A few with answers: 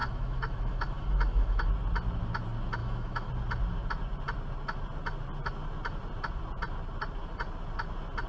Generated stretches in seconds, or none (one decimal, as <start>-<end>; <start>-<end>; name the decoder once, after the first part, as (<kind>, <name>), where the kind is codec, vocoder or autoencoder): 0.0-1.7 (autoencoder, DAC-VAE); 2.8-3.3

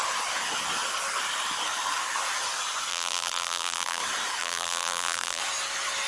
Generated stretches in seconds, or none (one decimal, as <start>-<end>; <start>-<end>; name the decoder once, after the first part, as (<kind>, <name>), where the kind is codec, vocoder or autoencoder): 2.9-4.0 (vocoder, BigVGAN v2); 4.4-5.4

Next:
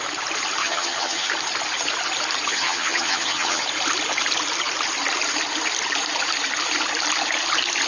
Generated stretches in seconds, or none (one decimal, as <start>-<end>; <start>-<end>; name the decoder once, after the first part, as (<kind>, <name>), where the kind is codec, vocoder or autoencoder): 0.6-1.3 (vocoder, HiFi-GAN); 2.5-3.6

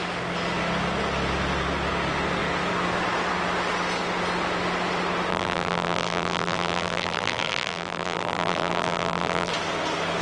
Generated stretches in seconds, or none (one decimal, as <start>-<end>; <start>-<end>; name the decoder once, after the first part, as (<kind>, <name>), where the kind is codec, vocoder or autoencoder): 5.3-9.5 (vocoder, BigVGAN v2)

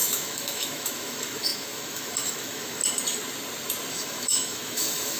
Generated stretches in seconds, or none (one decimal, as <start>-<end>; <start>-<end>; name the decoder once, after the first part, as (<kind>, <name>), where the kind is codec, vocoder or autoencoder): 0.0-2.8 (autoencoder, DAC-VAE); 3.9-5.2

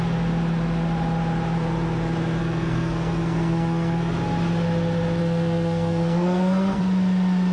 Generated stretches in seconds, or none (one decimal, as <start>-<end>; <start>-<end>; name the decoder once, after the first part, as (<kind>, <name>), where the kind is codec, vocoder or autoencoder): 2.4-4.1 (codec, SNAC); 5.2-6.8